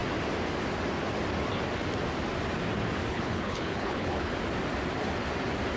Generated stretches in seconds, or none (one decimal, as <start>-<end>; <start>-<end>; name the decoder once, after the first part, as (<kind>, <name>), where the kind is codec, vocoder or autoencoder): 3.1-4.3 (codec, HILCodec)